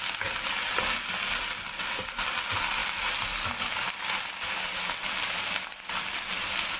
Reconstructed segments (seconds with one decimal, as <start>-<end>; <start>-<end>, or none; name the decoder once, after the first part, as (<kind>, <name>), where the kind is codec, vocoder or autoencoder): none